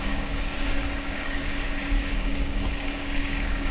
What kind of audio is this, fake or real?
fake